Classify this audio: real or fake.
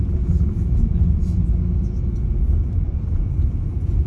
fake